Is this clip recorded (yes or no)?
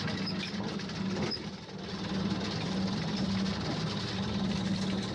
yes